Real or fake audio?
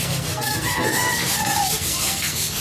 fake